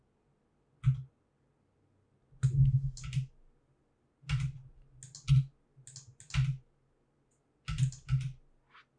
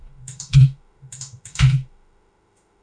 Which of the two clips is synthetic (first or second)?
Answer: second